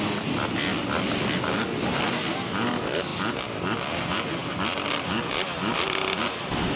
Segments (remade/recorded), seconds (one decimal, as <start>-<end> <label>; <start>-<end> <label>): 0.0-0.7 recorded; 0.7-2.0 remade; 2.0-4.4 recorded; 4.4-6.8 remade